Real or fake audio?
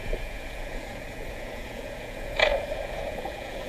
fake